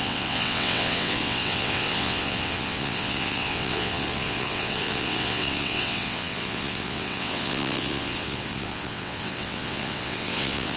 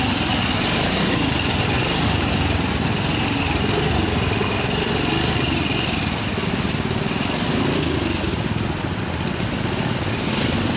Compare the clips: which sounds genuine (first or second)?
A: second